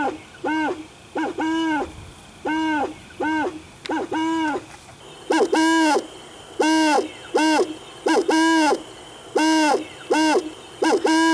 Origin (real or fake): real